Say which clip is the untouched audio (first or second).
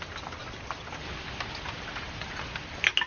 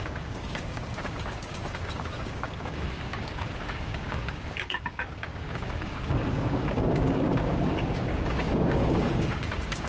first